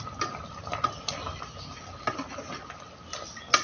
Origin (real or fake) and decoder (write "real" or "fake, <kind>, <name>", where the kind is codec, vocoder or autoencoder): real